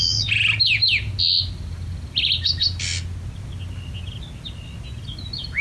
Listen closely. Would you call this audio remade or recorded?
recorded